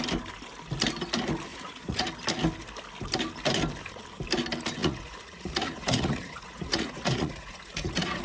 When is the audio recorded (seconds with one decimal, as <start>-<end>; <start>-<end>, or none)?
0.0-1.5; 2.1-4.8